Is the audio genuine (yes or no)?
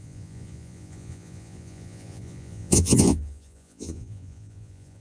no